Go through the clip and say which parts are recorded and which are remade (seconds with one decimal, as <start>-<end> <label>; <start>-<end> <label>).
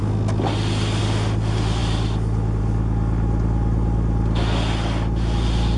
0.0-5.8 recorded